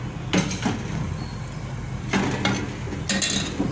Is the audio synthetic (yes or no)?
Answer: no